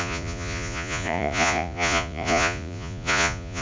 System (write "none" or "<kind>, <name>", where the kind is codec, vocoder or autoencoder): vocoder, Vocos